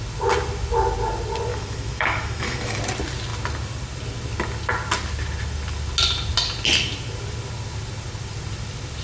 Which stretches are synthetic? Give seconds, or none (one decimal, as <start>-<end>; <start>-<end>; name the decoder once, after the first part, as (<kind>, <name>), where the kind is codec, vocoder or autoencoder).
1.5-2.8 (autoencoder, DAC-VAE)